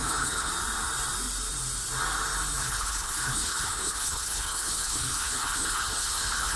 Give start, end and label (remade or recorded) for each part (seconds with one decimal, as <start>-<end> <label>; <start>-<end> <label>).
0.0-0.5 remade; 0.5-2.6 recorded; 2.6-6.6 remade